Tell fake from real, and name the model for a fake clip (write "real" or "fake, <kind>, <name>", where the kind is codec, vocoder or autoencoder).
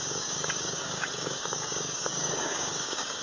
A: fake, codec, DAC